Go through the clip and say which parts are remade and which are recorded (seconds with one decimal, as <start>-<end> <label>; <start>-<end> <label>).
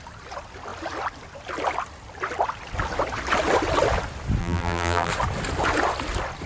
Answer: 0.0-4.4 recorded; 4.4-5.1 remade; 5.1-6.5 recorded